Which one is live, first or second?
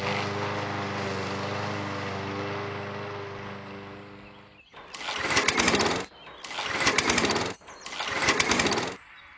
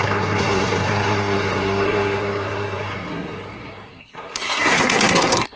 first